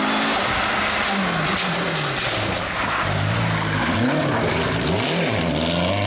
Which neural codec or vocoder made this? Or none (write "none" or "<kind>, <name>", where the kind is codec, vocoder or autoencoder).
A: none